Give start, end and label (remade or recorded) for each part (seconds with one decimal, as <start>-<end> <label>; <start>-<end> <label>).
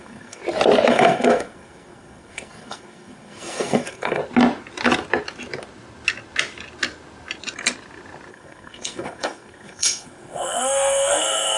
0.0-0.4 remade; 0.4-0.9 recorded; 0.9-4.2 remade; 4.2-8.3 recorded; 8.3-11.6 remade